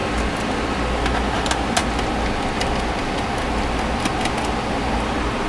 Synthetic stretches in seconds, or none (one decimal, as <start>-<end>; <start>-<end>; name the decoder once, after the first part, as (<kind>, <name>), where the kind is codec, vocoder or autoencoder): none